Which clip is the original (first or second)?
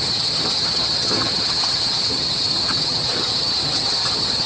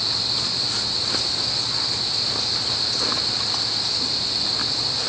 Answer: second